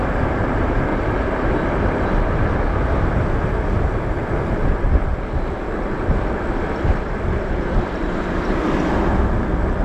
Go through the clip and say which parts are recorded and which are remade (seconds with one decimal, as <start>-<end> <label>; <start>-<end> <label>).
0.0-0.9 remade; 0.9-4.8 recorded; 4.8-9.8 remade